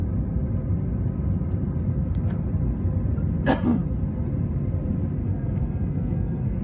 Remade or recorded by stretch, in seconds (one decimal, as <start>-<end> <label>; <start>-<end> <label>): 0.0-5.2 recorded; 5.2-6.6 remade